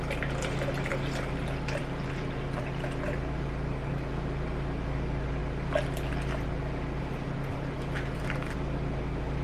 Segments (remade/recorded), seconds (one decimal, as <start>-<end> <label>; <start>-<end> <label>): 0.0-9.4 recorded